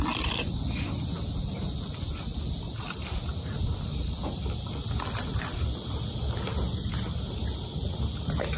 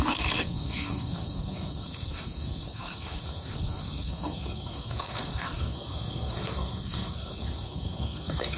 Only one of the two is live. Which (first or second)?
first